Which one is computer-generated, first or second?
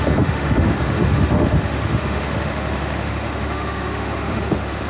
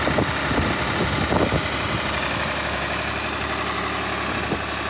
first